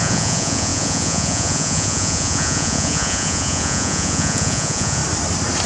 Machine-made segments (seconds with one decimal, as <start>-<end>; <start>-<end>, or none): 0.0-5.0